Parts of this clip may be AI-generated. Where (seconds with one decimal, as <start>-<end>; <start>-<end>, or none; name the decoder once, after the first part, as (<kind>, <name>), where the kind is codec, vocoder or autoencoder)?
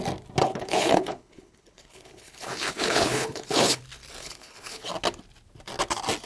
0.4-3.8 (codec, HILCodec); 4.2-4.9